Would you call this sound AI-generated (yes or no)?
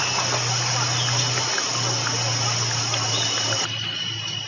no